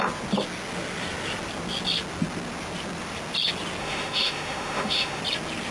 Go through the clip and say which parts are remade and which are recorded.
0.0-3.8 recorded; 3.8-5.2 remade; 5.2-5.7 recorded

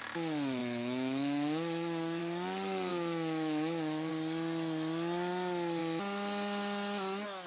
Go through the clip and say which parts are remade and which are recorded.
0.0-0.6 recorded; 0.6-2.2 remade; 2.2-2.9 recorded; 2.9-4.1 remade; 4.1-7.5 recorded

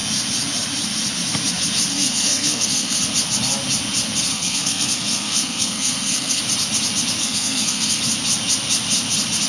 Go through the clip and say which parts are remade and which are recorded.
0.0-1.9 recorded; 1.9-3.0 remade; 3.0-4.3 recorded; 4.3-6.4 remade; 6.4-7.2 recorded; 7.2-8.0 remade; 8.0-9.5 recorded